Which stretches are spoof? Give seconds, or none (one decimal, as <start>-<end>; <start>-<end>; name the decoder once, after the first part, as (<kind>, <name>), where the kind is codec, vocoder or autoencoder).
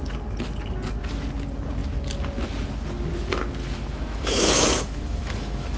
3.6-5.8 (autoencoder, DAC-VAE)